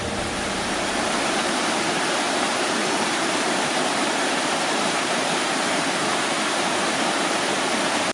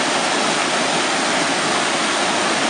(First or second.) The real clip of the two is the second